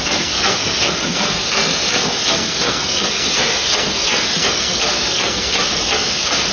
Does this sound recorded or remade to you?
remade